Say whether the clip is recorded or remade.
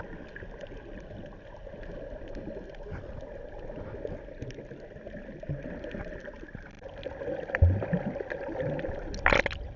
recorded